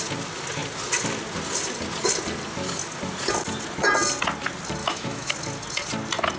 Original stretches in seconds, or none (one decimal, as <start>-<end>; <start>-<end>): 0.0-4.8; 5.3-6.4